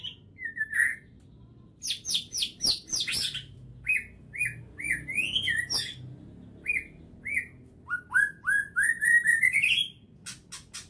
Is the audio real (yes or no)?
yes